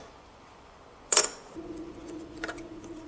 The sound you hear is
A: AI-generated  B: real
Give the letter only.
A